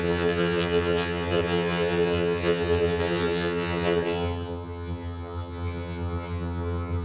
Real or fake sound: fake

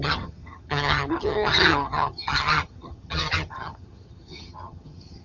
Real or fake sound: fake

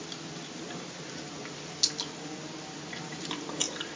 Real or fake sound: real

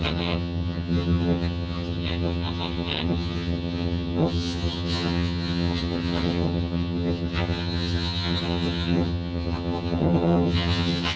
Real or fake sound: fake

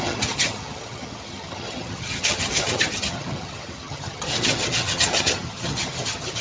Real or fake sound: fake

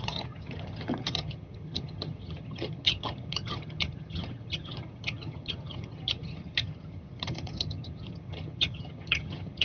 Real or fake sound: fake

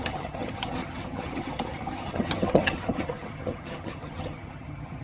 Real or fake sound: fake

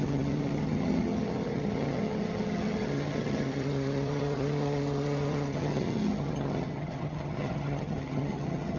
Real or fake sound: fake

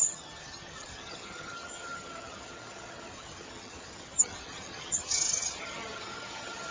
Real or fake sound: fake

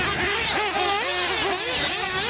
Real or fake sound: real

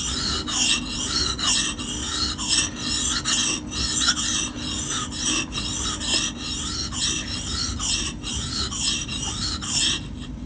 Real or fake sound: real